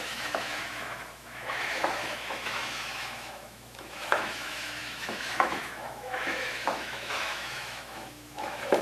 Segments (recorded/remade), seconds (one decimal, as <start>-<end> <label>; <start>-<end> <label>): 0.0-8.8 remade